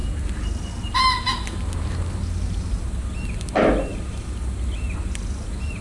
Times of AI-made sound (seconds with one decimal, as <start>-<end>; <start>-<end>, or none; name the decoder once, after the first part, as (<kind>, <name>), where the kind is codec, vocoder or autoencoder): none